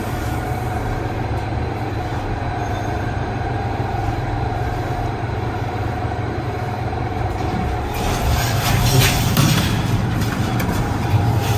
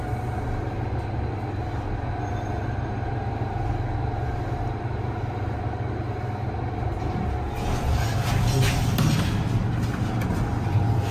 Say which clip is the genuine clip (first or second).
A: second